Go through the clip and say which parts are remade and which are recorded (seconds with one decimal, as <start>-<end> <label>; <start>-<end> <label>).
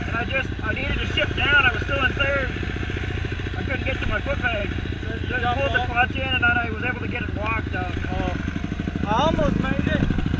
0.0-10.4 recorded